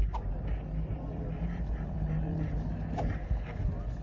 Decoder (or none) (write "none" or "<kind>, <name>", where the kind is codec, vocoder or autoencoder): none